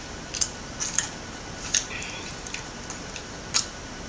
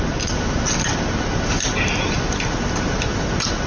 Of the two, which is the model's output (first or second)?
first